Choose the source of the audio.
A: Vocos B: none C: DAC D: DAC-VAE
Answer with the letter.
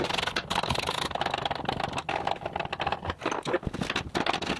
B